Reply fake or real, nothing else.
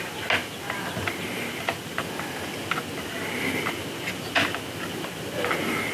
real